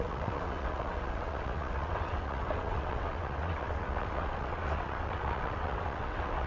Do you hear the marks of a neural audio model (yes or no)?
yes